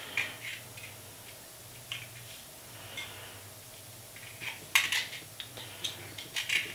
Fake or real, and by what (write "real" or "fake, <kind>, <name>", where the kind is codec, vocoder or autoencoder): real